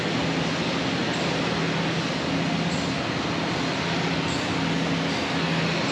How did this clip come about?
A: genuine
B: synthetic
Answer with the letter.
A